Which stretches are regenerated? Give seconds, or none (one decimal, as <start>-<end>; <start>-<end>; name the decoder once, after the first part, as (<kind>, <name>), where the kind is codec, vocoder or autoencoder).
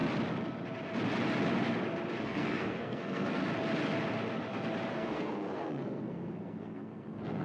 2.2-3.4 (codec, SNAC); 4.9-7.4